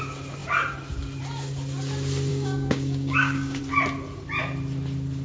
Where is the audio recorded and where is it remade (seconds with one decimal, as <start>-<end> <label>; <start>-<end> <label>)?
0.0-2.3 recorded; 2.3-3.6 remade; 3.6-5.2 recorded